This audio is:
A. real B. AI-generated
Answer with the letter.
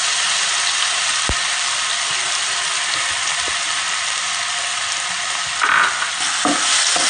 A